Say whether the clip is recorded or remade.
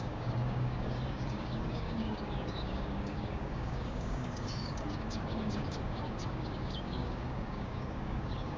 remade